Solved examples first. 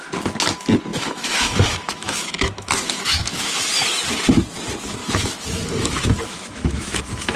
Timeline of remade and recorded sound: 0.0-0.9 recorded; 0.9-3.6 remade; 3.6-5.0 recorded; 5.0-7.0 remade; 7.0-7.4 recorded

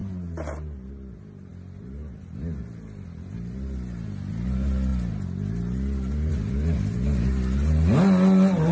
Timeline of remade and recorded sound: 0.0-8.7 recorded

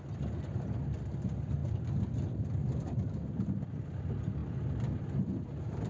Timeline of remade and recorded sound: 0.0-5.9 recorded